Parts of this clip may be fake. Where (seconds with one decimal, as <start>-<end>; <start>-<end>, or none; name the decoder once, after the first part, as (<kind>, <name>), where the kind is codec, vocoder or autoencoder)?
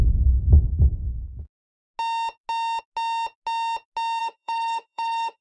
4.2-5.4 (autoencoder, DAC-VAE)